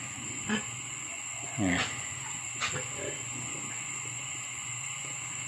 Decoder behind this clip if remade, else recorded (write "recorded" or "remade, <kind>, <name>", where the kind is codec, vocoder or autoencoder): remade, vocoder, Vocos